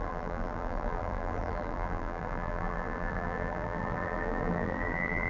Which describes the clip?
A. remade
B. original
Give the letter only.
A